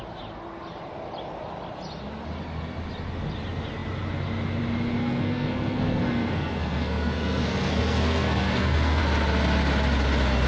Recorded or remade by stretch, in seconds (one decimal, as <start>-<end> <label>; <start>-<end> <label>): 0.0-5.0 recorded; 5.0-9.0 remade; 9.0-10.5 recorded